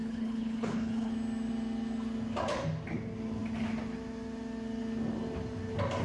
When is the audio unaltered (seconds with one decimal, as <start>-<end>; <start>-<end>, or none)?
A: 1.1-6.0